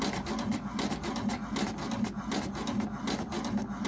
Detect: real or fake real